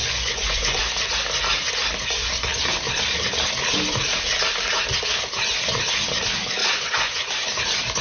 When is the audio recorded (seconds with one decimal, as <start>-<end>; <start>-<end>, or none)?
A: 0.8-6.6; 7.3-8.0